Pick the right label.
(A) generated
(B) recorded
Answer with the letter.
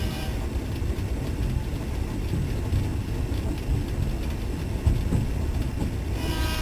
B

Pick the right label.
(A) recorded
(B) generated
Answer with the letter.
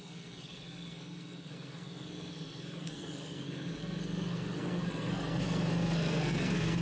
B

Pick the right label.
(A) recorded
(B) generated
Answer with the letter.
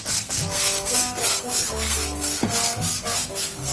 B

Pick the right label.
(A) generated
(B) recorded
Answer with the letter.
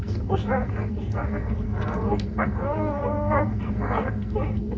A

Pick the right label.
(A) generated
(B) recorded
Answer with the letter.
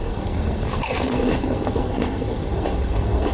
A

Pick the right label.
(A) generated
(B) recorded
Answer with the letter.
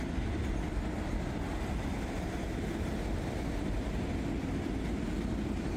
B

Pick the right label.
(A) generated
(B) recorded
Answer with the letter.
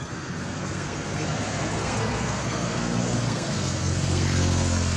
A